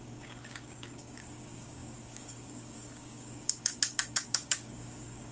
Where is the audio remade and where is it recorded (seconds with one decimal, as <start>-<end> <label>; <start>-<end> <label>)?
0.0-5.3 remade